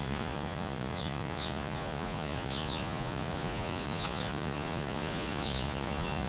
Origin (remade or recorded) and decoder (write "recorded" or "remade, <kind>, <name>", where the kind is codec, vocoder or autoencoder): remade, vocoder, Vocos